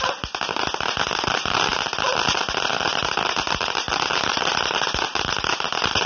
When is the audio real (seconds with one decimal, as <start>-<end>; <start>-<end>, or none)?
0.0-6.1